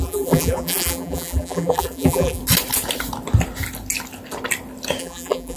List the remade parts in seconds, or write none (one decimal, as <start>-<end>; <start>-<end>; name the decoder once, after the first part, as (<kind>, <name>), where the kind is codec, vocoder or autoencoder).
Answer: 0.0-2.4 (vocoder, BigVGAN v2); 5.0-5.6